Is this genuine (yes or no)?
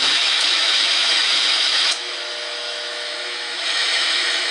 no